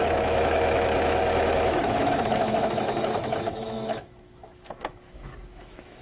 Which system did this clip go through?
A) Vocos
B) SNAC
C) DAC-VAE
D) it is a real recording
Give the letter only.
C